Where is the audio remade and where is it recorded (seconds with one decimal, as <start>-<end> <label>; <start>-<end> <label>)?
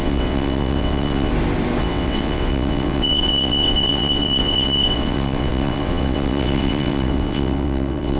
0.0-1.3 remade; 1.3-1.8 recorded; 1.8-8.2 remade